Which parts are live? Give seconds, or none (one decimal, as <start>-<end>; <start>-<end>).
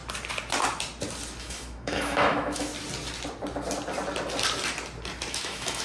0.0-1.4; 2.7-5.3